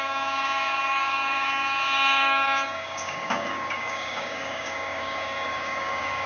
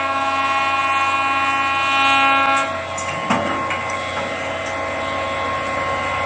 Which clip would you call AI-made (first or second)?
first